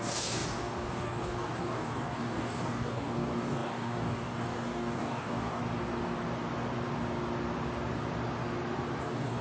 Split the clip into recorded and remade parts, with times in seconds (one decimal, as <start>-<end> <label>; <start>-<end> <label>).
0.0-5.6 remade; 5.6-9.0 recorded; 9.0-9.4 remade